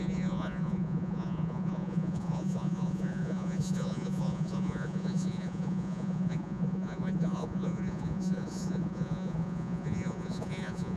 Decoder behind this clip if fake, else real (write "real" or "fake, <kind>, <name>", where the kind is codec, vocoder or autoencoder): fake, vocoder, Vocos